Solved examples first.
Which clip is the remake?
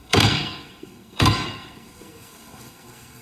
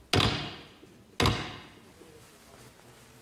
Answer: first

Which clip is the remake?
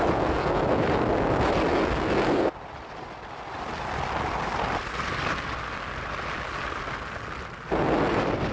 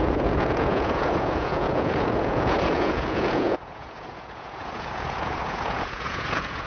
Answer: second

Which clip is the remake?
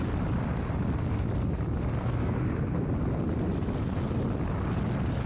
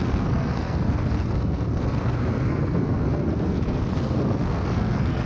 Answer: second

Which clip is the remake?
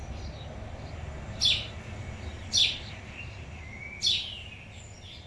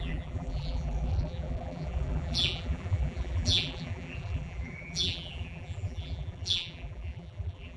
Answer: second